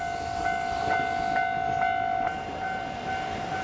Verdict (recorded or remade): recorded